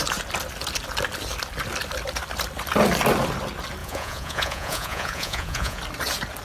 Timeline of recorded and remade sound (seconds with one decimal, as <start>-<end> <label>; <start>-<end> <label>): 0.0-3.8 recorded; 3.8-5.8 remade; 5.8-6.4 recorded